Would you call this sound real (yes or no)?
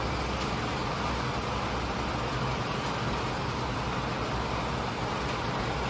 yes